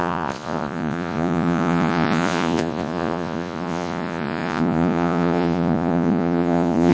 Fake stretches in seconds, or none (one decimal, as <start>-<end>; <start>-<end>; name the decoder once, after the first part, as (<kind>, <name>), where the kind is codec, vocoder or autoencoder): 0.0-6.9 (vocoder, Vocos)